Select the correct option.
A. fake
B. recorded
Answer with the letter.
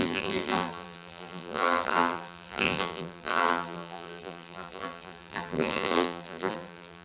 A